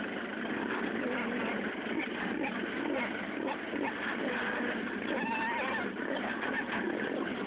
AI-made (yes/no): no